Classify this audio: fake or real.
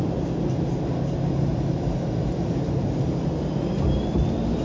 real